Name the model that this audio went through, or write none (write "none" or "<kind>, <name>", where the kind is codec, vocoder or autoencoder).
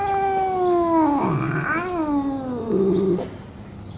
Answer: none